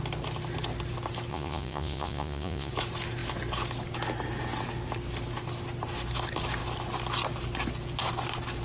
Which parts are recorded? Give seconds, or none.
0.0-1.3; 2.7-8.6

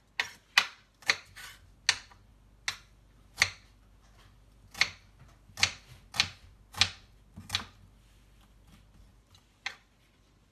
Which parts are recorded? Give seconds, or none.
0.0-10.5

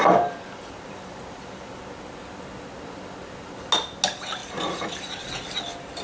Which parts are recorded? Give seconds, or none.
1.8-4.4; 5.3-6.0